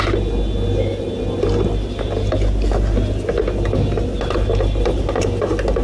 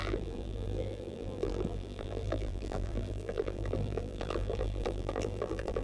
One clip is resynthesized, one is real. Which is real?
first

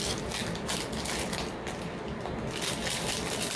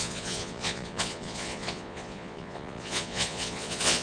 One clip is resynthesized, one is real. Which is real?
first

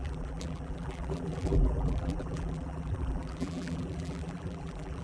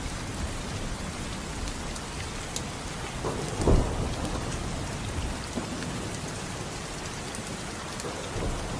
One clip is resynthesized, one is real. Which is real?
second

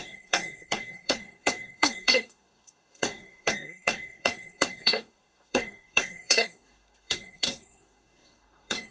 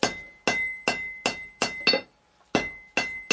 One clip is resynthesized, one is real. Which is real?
second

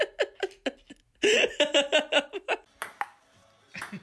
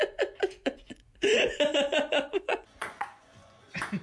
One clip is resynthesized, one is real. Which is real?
first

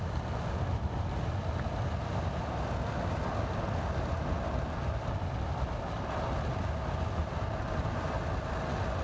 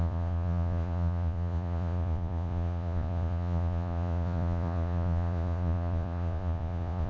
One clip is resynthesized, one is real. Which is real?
first